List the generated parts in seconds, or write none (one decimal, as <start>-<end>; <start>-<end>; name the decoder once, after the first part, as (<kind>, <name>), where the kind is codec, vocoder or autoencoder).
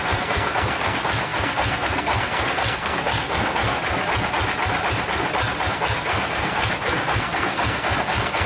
0.0-3.7 (codec, SNAC); 5.7-8.5